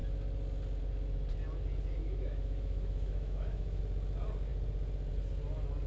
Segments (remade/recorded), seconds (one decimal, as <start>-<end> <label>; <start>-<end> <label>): 0.0-2.0 recorded; 2.0-3.8 remade; 3.8-5.9 recorded